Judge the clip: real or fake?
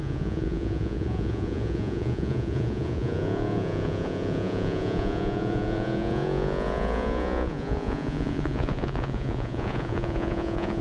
fake